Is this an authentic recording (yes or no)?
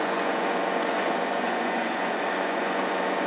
no